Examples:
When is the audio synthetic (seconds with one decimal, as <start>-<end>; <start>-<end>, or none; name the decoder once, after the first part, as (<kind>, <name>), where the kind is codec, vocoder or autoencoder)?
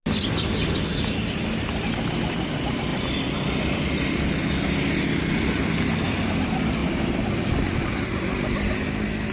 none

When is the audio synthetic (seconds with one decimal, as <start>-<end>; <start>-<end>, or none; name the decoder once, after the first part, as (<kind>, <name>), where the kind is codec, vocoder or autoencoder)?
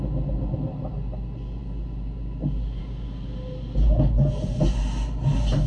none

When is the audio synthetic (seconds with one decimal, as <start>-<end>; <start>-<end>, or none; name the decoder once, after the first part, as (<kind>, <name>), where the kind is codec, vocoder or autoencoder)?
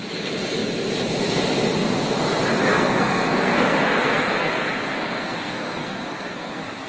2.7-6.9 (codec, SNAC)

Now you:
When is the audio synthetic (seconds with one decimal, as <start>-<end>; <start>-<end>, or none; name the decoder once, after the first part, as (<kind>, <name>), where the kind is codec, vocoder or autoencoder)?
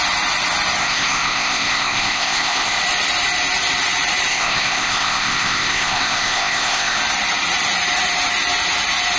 0.8-2.8 (codec, ZipCodec); 4.3-7.0